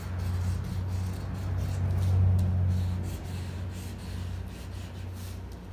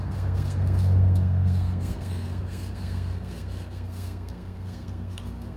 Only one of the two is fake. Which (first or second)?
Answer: second